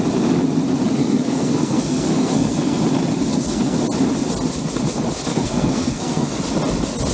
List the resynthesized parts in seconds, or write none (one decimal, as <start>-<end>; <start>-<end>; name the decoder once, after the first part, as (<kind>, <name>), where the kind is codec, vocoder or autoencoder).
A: 1.0-2.8 (codec, SNAC); 3.3-3.8; 5.3-6.4